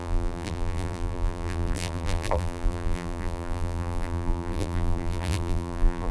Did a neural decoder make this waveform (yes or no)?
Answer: yes